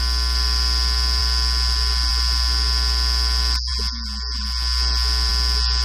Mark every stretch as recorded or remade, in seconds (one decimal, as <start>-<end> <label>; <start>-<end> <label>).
0.0-5.8 recorded